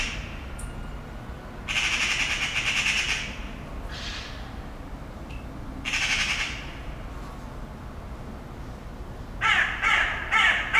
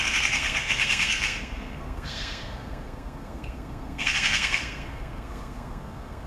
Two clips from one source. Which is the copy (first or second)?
second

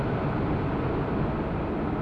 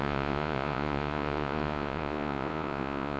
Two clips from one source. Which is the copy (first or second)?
second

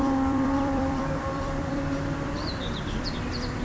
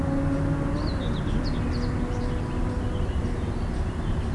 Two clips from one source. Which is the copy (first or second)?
first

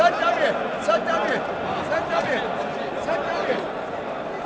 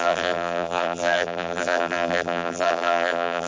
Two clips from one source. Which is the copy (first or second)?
second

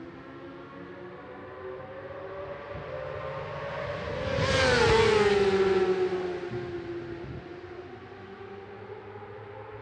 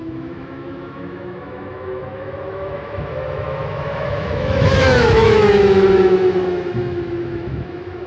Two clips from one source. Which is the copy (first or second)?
second